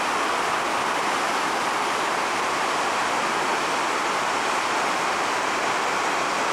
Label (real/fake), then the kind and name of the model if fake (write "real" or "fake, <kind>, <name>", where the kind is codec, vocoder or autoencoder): real